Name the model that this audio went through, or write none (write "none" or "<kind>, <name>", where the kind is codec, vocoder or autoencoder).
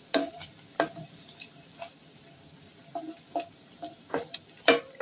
vocoder, BigVGAN v2